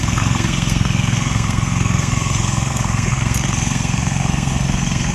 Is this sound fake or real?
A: fake